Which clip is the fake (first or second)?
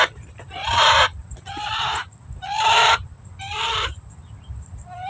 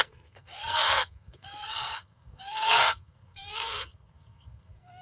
second